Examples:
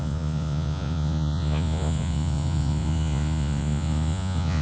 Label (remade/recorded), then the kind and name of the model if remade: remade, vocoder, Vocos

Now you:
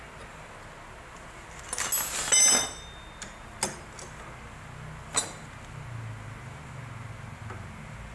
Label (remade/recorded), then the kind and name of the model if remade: recorded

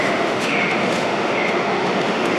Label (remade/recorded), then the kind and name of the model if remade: remade, autoencoder, DAC-VAE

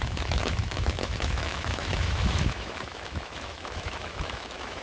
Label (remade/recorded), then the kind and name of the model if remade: remade, autoencoder, DAC-VAE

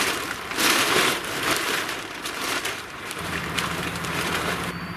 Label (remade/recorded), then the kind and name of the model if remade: remade, vocoder, BigVGAN v2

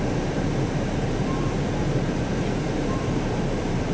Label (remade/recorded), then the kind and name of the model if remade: remade, vocoder, BigVGAN v2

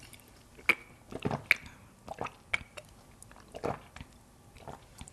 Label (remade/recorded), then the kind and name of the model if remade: recorded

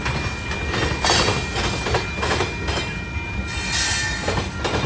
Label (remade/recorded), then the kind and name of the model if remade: recorded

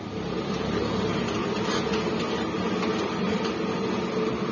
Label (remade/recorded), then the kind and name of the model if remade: recorded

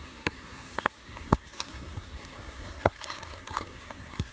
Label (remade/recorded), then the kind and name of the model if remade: remade, codec, SNAC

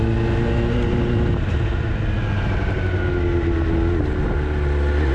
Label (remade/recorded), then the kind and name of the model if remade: recorded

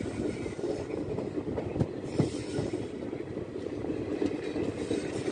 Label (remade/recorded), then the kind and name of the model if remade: recorded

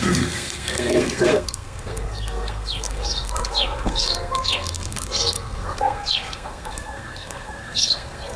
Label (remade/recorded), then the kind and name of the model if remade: remade, codec, SNAC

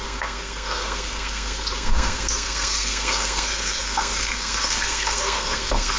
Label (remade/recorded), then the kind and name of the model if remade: remade, codec, SNAC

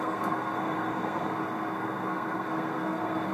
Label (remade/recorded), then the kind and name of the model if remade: remade, codec, SNAC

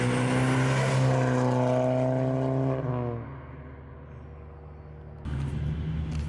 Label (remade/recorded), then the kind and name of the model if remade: recorded